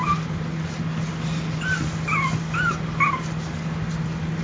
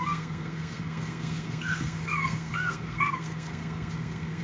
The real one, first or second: first